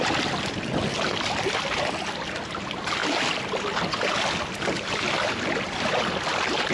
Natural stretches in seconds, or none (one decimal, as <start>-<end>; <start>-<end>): 0.0-6.7